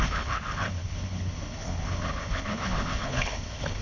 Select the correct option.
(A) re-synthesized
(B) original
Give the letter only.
A